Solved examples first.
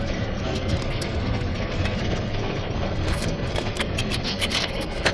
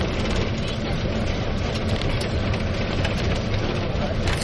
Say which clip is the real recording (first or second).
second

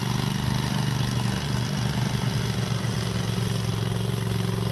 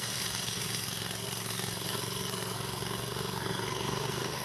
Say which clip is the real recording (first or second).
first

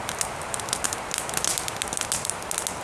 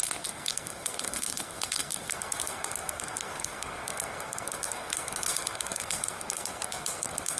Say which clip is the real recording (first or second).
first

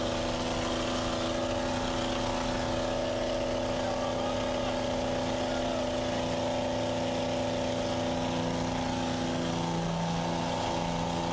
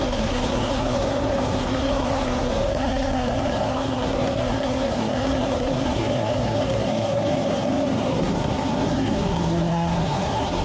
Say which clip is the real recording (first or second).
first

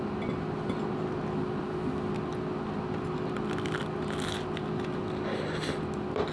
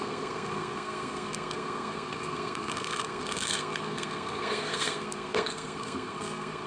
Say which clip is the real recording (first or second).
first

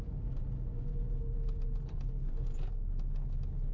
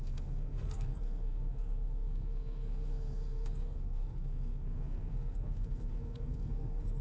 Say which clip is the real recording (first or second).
first